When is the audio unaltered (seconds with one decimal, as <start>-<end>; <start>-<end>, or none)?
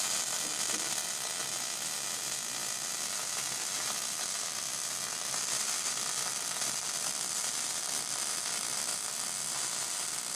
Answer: 1.0-5.3; 8.9-10.4